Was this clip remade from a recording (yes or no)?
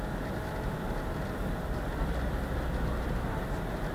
no